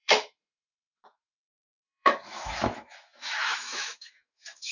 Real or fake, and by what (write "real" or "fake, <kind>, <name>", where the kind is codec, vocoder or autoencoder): fake, autoencoder, DAC-VAE